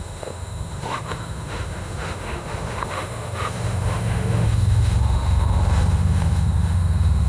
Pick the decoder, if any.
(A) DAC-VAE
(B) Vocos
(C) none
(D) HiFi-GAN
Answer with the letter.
A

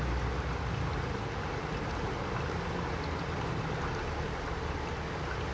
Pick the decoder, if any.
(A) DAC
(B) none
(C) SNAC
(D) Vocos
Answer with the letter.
B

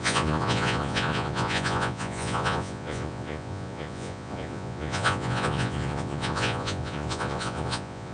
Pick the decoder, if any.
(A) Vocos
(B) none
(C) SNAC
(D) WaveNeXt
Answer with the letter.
A